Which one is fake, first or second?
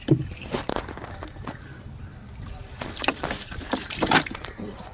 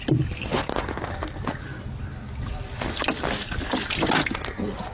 first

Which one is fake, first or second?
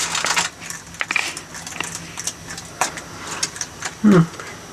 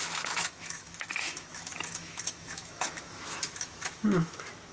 second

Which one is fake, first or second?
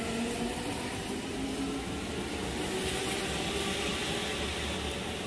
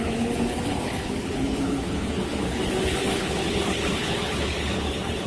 second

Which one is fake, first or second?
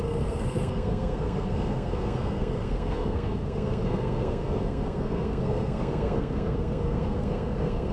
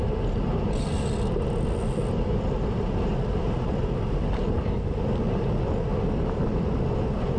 first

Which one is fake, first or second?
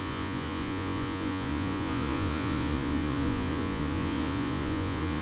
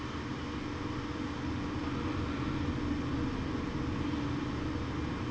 first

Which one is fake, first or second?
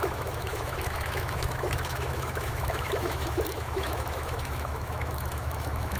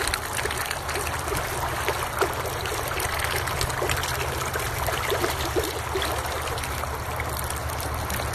first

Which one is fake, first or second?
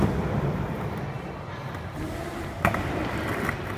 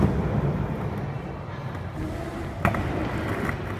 first